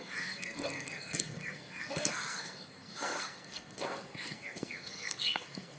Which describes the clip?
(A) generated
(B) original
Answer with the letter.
A